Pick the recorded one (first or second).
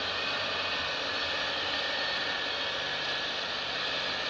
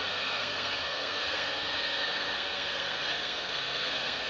first